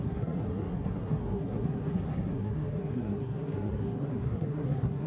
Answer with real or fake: fake